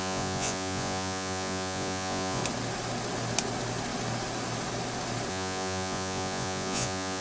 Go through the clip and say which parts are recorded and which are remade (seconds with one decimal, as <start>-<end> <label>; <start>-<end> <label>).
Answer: 0.0-2.4 remade; 2.4-5.3 recorded; 5.3-7.2 remade

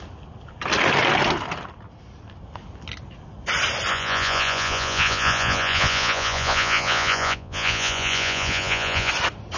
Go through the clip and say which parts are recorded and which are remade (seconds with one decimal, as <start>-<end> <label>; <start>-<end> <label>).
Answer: 0.0-3.9 recorded; 3.9-9.1 remade; 9.1-9.6 recorded

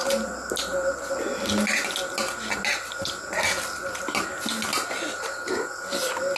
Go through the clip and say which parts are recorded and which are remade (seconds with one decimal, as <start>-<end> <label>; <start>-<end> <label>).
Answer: 0.0-6.4 recorded

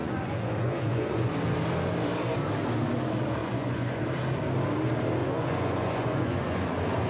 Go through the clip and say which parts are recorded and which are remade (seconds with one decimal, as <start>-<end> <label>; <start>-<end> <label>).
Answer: 0.0-1.3 remade; 1.3-3.4 recorded; 3.4-4.0 remade; 4.0-5.2 recorded; 5.2-7.1 remade

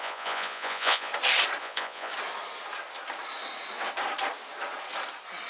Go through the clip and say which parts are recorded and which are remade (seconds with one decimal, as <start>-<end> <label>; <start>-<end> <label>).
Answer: 0.0-1.1 remade; 1.1-1.6 recorded; 1.6-2.1 remade; 2.1-5.5 recorded

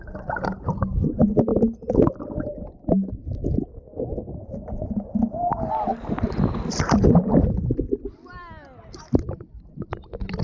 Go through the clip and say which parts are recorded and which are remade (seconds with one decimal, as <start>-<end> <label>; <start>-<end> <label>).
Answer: 0.0-10.4 recorded

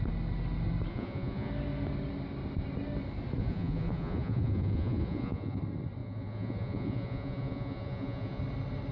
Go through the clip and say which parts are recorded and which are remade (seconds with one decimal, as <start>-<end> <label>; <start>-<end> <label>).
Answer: 0.0-0.9 recorded; 0.9-1.5 remade; 1.5-3.4 recorded; 3.4-5.6 remade; 5.6-6.0 recorded; 6.0-8.4 remade; 8.4-8.9 recorded

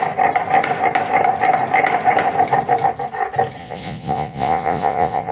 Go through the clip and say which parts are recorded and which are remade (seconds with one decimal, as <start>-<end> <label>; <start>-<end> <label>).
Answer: 0.0-3.6 recorded; 3.6-5.3 remade